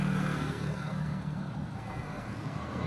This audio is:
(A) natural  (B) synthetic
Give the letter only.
B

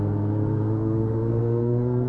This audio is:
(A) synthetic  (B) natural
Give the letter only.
A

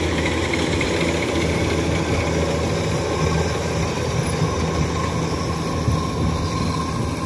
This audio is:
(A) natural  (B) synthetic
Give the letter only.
A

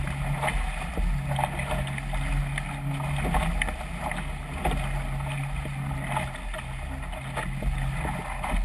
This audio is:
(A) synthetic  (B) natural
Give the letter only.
B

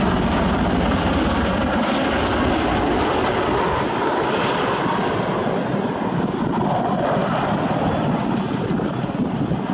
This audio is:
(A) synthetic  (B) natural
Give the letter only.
B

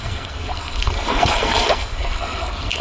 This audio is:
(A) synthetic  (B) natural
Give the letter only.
A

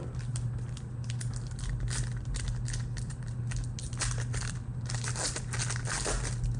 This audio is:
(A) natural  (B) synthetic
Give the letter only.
A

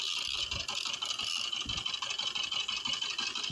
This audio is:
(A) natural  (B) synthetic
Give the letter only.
A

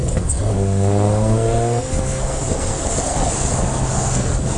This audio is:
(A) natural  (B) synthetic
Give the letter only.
B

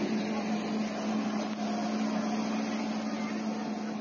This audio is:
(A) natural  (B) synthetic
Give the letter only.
A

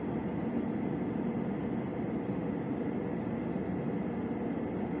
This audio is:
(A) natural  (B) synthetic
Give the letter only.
A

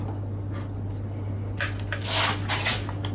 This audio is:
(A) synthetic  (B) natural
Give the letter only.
B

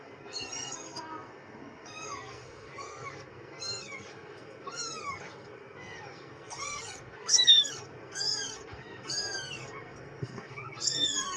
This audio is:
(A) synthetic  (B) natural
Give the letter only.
A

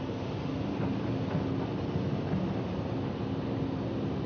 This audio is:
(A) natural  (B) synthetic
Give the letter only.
A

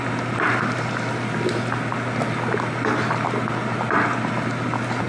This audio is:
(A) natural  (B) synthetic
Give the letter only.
A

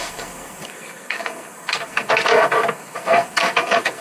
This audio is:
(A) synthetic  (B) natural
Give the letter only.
A